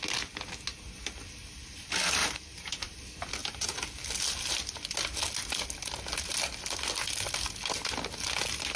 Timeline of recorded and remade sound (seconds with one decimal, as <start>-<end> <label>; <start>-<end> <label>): 0.0-2.2 recorded; 2.2-3.0 remade; 3.0-8.8 recorded